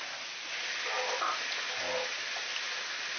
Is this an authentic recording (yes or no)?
yes